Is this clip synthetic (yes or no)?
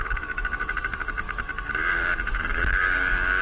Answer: yes